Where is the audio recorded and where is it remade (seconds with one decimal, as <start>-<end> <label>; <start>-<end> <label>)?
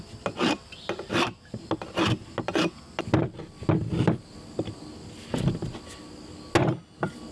0.0-7.3 recorded